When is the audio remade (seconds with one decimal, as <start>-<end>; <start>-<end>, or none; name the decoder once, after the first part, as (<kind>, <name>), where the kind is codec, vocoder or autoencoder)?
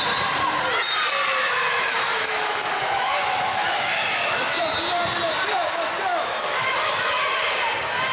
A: 2.1-4.6 (autoencoder, DAC-VAE); 6.1-7.2